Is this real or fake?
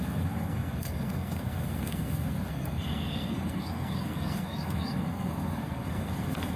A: fake